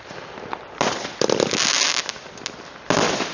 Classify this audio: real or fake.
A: real